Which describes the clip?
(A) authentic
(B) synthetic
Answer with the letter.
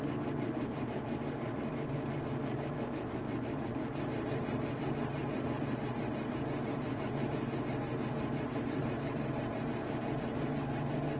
B